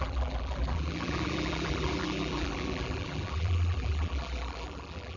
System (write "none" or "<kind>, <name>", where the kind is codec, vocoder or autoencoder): vocoder, BigVGAN v2